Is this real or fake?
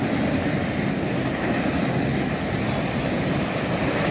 real